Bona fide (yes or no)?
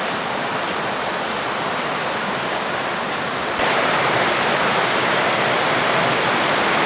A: yes